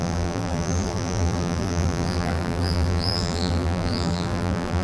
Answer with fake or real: fake